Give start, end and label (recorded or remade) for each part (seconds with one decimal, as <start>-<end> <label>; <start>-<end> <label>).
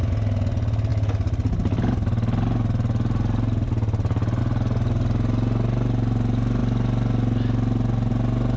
0.0-8.6 recorded